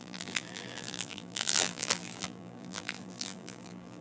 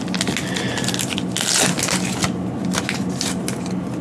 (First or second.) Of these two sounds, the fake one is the first